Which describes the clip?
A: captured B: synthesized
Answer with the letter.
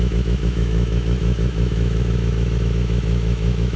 B